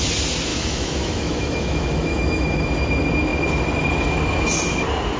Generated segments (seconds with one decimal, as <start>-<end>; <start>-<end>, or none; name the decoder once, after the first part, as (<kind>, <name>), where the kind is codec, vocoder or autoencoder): 0.5-2.7 (autoencoder, DAC-VAE)